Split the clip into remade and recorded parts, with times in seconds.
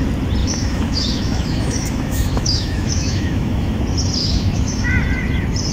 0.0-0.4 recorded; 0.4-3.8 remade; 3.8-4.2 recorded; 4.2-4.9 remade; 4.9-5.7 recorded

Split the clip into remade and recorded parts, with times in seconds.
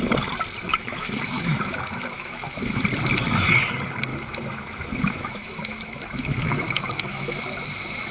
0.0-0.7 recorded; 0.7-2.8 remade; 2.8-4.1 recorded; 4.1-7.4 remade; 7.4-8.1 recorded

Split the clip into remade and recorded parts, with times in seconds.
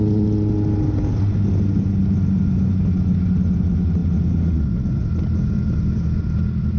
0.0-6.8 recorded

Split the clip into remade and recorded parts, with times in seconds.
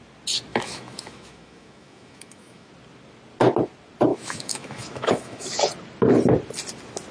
0.0-0.5 recorded; 0.5-2.7 remade; 2.7-4.1 recorded; 4.1-5.7 remade; 5.7-7.1 recorded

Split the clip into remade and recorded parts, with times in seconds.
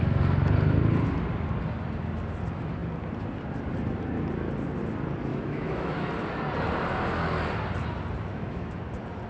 0.0-5.3 recorded; 5.3-6.1 remade; 6.1-8.3 recorded; 8.3-8.8 remade; 8.8-9.3 recorded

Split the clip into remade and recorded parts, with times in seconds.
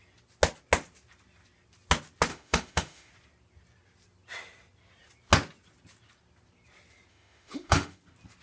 0.0-2.3 recorded; 2.3-3.1 remade; 3.1-7.1 recorded; 7.1-8.0 remade; 8.0-8.4 recorded